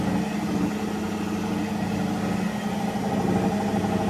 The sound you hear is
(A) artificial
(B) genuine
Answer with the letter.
B